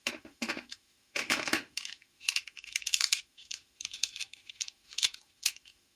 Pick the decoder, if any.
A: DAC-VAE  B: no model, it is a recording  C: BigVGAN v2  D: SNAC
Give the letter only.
A